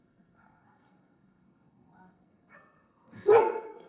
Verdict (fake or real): fake